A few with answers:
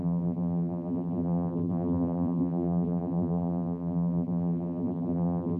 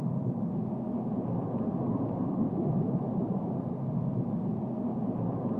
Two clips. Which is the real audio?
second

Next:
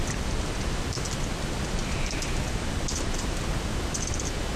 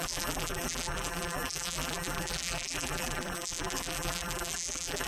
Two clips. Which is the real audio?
first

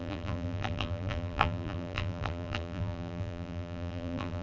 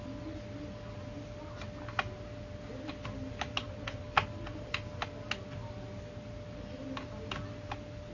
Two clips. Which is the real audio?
second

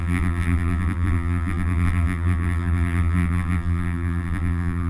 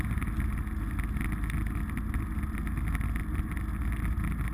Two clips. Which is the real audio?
second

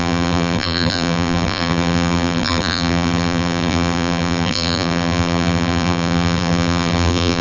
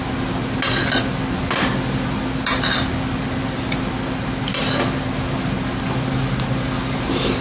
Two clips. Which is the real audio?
second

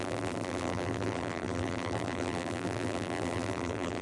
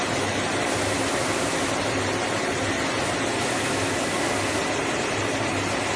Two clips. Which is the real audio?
second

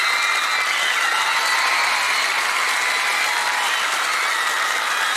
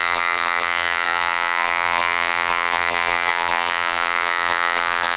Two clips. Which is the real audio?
first